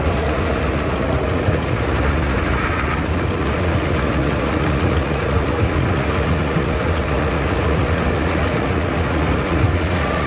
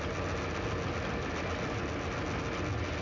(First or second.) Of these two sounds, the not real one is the first